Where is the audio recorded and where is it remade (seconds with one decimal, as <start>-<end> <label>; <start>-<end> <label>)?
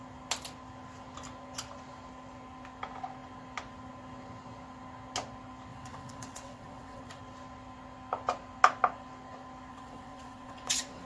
0.0-5.7 recorded; 5.7-7.2 remade; 7.2-9.7 recorded; 9.7-11.1 remade